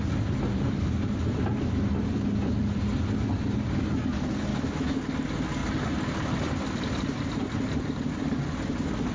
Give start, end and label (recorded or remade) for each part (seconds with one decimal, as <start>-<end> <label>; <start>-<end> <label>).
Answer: 0.0-4.5 recorded; 4.5-5.0 remade; 5.0-9.1 recorded